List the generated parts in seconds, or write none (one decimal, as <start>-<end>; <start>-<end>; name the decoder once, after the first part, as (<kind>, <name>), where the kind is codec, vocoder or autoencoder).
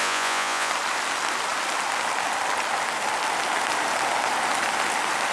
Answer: 0.0-0.7 (vocoder, Vocos)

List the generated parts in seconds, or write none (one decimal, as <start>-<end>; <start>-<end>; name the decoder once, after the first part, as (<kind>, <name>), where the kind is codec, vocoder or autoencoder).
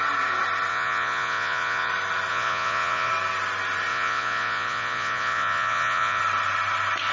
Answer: 0.7-1.9 (vocoder, Vocos); 2.3-3.1; 3.9-6.2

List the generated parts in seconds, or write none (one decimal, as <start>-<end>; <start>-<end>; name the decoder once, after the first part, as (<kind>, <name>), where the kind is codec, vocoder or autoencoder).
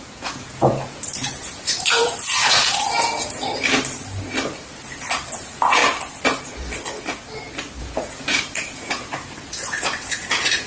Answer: 0.0-3.5 (vocoder, Vocos); 5.3-5.8; 7.8-10.7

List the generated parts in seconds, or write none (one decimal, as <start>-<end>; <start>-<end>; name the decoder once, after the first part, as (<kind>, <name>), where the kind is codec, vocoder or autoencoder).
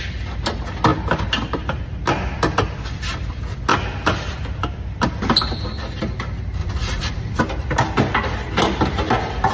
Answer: 6.6-7.4 (vocoder, Vocos)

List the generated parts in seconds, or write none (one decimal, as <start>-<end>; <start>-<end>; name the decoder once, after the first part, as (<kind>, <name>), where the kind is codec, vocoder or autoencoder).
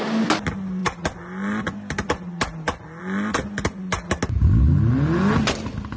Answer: none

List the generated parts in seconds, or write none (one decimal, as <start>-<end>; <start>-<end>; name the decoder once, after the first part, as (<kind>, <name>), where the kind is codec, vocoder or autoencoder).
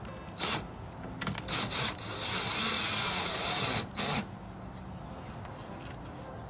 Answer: 2.7-3.3 (vocoder, Vocos)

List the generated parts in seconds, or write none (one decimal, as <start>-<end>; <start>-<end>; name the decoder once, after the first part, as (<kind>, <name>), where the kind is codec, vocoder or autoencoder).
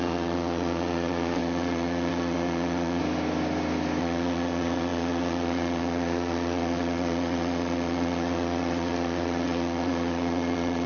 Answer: 0.0-3.0 (vocoder, Vocos); 4.0-10.9